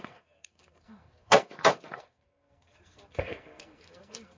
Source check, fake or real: fake